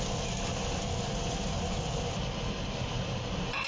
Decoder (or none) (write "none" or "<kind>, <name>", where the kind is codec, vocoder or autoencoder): none